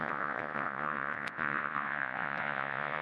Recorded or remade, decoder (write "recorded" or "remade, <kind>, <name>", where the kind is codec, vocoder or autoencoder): remade, vocoder, Vocos